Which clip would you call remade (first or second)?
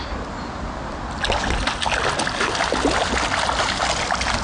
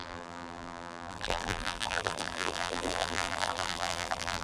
second